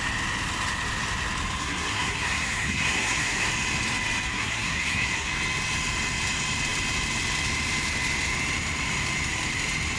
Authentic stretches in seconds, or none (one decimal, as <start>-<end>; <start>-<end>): 0.0-1.6; 3.5-4.3; 5.3-10.0